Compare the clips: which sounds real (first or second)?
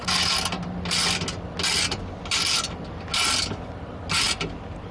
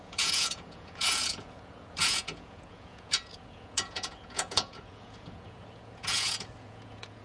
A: first